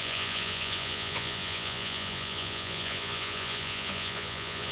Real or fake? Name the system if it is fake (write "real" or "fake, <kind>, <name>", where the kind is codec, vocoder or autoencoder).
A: fake, vocoder, Vocos